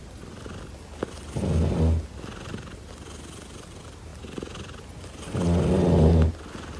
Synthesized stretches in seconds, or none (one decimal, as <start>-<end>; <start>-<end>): none